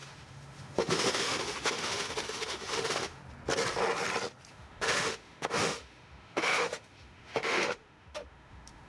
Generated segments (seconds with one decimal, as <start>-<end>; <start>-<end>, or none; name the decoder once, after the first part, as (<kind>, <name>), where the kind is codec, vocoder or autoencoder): 0.0-3.2 (autoencoder, DAC-VAE); 4.5-8.9